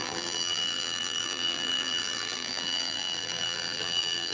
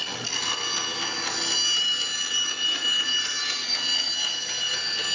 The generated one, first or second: first